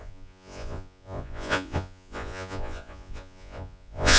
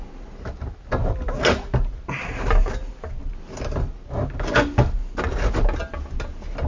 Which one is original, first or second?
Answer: second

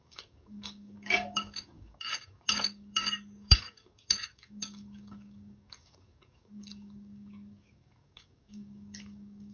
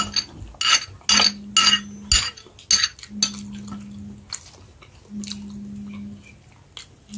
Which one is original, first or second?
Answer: second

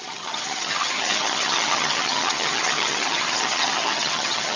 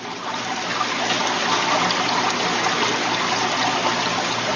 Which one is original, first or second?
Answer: second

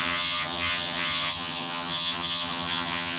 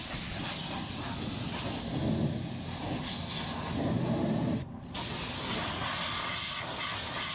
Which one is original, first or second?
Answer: second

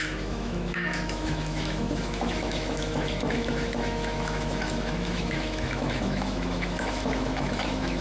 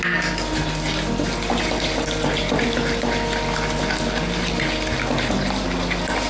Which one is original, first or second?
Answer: second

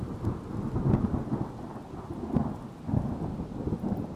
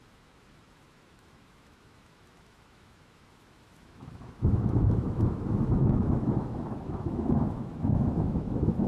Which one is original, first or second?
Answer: first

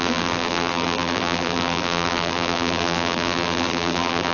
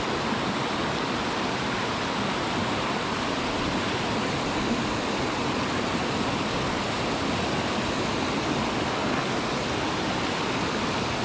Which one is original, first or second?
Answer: second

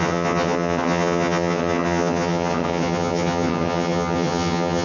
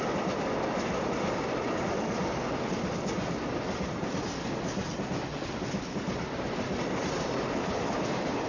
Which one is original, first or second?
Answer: second